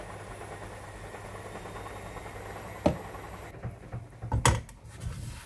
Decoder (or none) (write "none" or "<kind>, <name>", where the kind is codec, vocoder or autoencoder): none